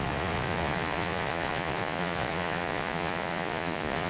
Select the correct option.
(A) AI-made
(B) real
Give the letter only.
A